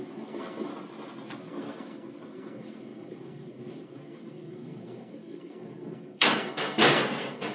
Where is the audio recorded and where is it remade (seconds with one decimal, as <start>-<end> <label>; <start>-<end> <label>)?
0.0-0.7 remade; 0.7-1.4 recorded; 1.4-7.5 remade